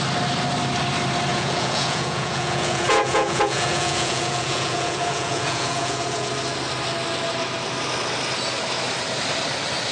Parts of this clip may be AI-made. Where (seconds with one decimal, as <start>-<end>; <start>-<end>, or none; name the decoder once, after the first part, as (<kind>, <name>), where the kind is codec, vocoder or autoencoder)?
1.3-6.3 (vocoder, Vocos)